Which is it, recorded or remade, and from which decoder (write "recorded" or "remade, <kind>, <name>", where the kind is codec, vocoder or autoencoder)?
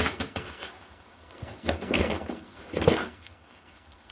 remade, codec, SNAC